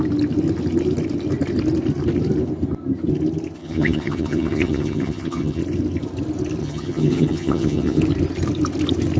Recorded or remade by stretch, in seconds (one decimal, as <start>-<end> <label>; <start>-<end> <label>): 0.0-3.6 recorded; 3.6-5.6 remade; 5.6-6.6 recorded; 6.6-8.0 remade; 8.0-9.2 recorded